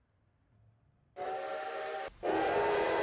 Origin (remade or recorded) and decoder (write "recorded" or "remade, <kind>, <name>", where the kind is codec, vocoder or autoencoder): recorded